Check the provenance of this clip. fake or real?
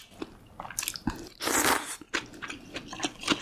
real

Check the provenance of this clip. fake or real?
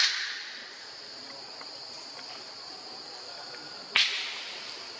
real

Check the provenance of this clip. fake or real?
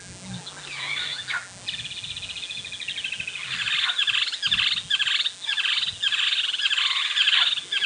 real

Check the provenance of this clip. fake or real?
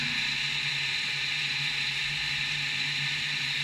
real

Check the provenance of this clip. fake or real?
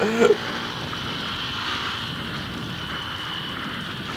real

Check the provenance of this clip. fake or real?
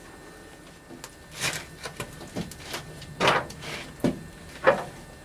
real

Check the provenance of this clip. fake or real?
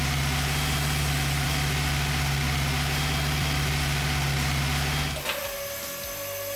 real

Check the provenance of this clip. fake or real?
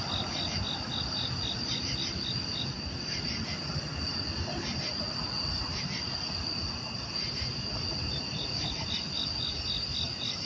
real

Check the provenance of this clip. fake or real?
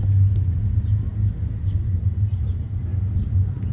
real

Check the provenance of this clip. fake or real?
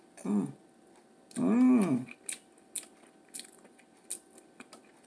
real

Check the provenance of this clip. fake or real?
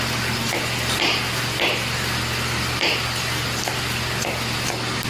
real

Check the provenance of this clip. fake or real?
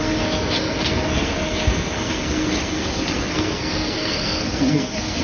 fake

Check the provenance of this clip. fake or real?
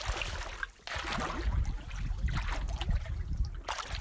real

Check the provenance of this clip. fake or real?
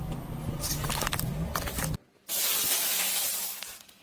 real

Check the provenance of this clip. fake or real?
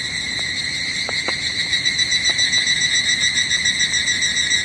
real